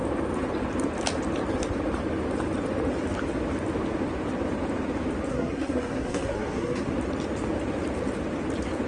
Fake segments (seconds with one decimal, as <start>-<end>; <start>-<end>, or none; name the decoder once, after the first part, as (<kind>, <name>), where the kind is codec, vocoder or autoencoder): 5.3-6.9 (codec, SNAC)